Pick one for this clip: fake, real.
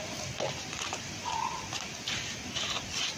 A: real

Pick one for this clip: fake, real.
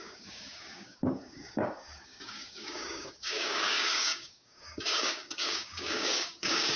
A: fake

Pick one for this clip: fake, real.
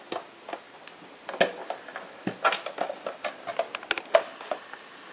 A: real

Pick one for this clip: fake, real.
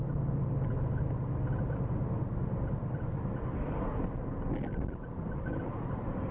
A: real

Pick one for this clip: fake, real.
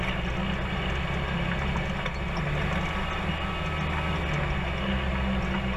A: real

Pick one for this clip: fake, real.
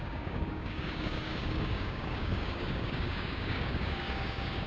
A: fake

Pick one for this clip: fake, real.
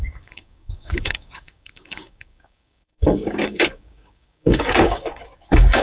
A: fake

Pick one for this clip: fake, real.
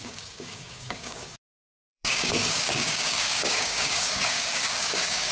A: fake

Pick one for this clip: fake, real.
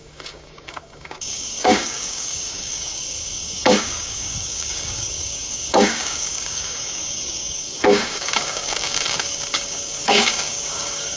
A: fake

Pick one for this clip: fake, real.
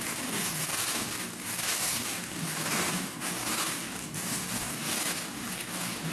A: fake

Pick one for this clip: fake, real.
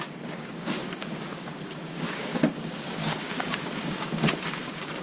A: fake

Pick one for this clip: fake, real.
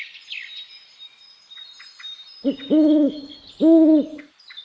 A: real